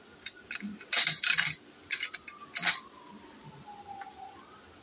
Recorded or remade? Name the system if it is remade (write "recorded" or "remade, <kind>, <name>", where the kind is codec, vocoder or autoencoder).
recorded